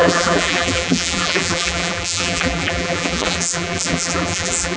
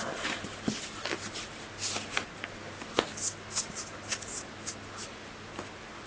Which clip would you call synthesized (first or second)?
first